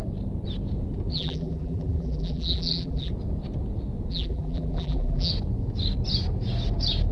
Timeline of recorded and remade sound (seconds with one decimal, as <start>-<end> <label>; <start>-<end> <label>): 0.0-1.1 recorded; 1.1-3.1 remade; 3.1-4.1 recorded; 4.1-5.3 remade; 5.3-7.1 recorded